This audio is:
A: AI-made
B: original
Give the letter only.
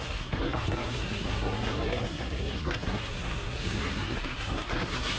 A